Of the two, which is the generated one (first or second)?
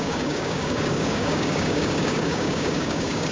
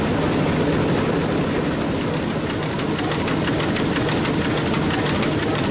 first